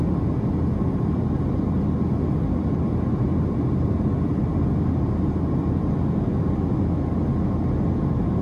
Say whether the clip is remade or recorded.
recorded